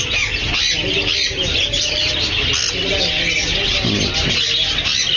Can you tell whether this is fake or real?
real